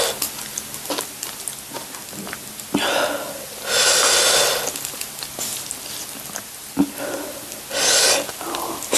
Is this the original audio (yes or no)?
yes